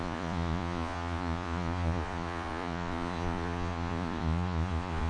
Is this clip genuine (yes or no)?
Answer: no